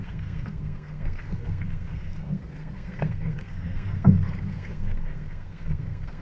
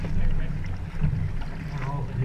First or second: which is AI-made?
first